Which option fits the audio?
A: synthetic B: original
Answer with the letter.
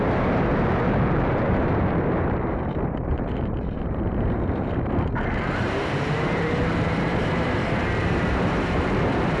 A